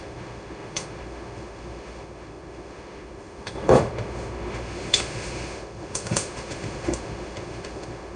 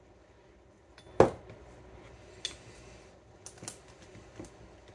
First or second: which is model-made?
first